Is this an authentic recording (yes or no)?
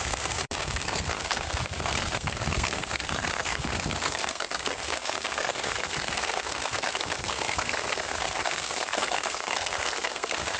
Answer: no